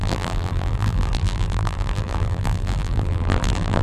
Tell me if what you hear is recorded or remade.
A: remade